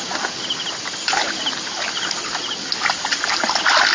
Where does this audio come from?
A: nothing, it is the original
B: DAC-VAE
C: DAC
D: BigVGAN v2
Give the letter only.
A